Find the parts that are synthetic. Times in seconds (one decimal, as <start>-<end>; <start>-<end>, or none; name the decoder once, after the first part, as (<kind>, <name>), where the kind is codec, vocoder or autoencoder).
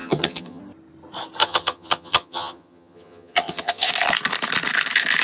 0.0-0.6 (vocoder, HiFi-GAN); 1.4-3.9